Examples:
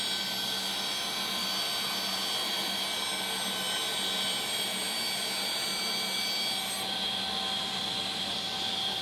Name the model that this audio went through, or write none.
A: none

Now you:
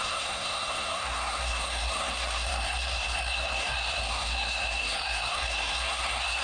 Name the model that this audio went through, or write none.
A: codec, SNAC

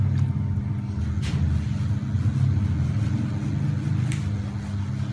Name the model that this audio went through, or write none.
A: none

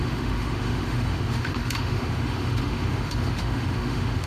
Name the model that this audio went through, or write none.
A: autoencoder, DAC-VAE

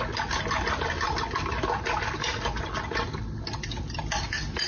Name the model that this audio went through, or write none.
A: none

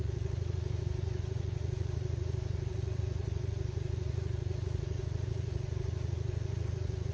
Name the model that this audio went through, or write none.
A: vocoder, Vocos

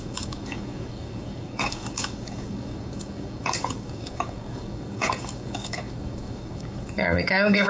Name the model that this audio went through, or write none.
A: codec, DAC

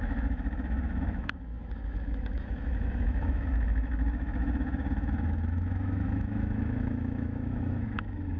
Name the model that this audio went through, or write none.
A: autoencoder, DAC-VAE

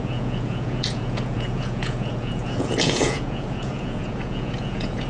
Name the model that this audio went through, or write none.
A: vocoder, Vocos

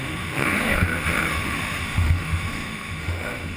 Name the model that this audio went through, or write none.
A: autoencoder, DAC-VAE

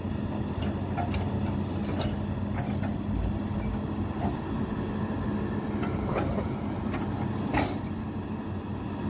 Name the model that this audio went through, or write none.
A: none